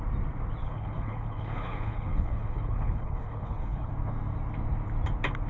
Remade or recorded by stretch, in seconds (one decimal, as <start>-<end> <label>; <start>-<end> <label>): 0.0-0.6 recorded; 0.6-3.9 remade; 3.9-5.5 recorded